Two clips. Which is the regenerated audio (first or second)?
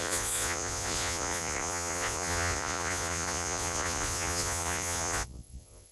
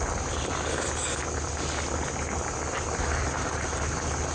first